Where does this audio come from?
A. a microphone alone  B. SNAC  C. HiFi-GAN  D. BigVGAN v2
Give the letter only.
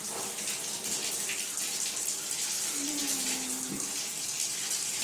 A